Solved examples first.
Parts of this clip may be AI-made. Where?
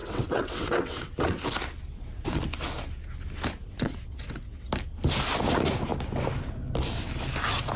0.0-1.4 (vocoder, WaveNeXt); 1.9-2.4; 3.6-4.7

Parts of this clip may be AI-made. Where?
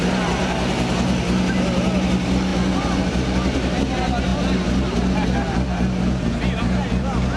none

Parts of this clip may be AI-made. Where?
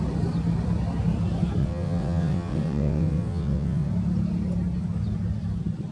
1.6-3.9 (vocoder, WaveNeXt)